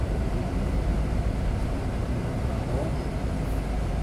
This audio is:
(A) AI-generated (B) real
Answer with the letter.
A